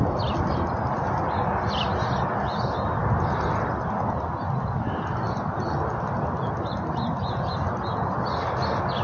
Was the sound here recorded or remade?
recorded